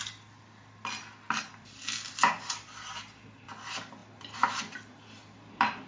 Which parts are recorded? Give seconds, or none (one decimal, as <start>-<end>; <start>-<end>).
0.0-5.9